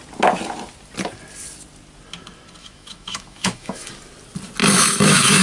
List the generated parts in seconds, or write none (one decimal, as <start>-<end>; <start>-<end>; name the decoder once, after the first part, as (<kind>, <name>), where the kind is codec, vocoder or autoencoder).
2.6-3.9 (autoencoder, DAC-VAE); 4.6-5.4